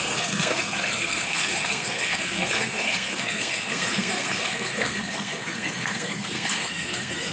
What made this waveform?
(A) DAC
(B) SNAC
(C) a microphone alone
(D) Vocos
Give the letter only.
B